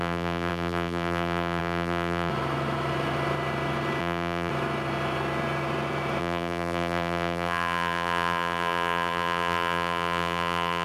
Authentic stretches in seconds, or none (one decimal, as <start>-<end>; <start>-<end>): 2.3-4.0; 4.5-6.2